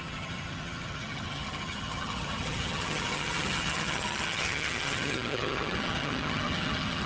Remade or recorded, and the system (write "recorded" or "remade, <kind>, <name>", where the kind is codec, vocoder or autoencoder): remade, vocoder, HiFi-GAN